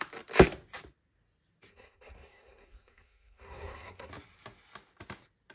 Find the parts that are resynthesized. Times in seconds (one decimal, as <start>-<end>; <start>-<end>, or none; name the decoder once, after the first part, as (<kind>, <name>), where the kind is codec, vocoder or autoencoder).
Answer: 1.7-4.1 (codec, SNAC)